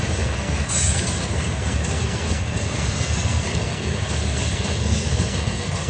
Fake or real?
fake